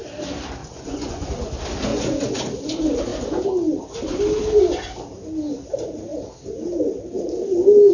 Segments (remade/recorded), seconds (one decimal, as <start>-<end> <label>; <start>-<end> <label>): 0.0-0.6 recorded; 0.6-1.3 remade; 1.3-1.9 recorded; 1.9-2.4 remade; 2.4-7.9 recorded